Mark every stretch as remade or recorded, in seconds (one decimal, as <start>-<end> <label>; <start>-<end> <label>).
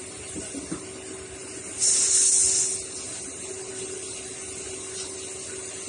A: 0.0-5.9 recorded